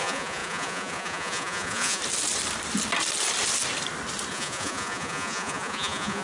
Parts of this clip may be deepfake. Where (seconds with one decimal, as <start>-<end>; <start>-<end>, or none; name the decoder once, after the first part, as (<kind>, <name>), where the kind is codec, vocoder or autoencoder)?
0.0-2.0 (vocoder, Vocos); 4.3-6.2